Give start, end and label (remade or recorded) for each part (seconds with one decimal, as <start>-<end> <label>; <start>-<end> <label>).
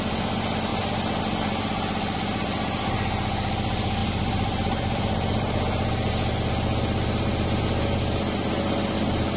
0.0-0.7 recorded; 0.7-1.2 remade; 1.2-4.0 recorded; 4.0-6.1 remade; 6.1-9.4 recorded